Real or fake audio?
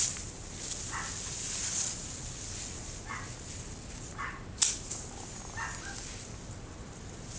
real